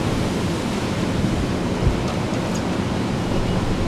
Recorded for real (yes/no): yes